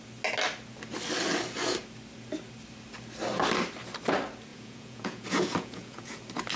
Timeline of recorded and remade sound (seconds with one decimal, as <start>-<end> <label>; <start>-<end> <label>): 0.0-4.5 recorded; 4.5-6.1 remade; 6.1-6.6 recorded